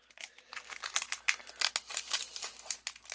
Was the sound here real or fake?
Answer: real